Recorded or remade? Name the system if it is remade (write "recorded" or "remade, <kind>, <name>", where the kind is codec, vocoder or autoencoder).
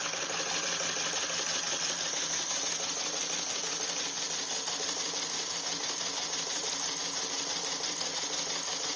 recorded